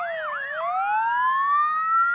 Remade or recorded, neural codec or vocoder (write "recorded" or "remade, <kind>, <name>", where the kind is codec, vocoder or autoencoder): recorded